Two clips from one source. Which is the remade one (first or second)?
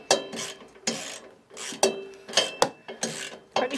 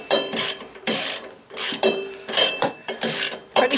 second